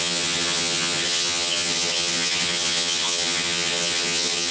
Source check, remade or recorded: remade